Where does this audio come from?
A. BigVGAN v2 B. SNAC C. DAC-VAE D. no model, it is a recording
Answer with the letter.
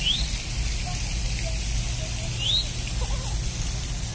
D